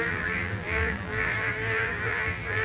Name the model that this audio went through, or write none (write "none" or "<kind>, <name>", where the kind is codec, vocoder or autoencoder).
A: vocoder, BigVGAN v2